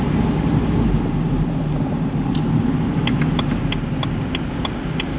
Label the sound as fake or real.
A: real